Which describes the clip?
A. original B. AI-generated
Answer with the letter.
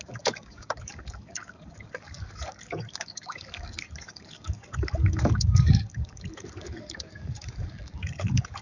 B